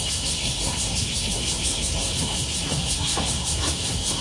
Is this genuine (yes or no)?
no